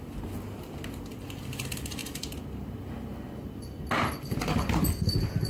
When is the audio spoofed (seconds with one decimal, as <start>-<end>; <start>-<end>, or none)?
none